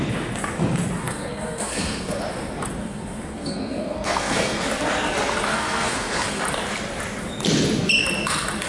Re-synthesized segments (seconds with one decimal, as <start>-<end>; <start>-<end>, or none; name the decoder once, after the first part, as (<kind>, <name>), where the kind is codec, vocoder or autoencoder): 1.0-2.2 (codec, SNAC); 2.8-4.6; 5.5-6.4